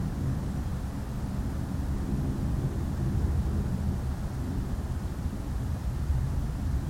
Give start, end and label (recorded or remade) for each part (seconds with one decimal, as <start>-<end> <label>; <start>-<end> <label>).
0.0-0.7 remade; 0.7-4.7 recorded; 4.7-6.9 remade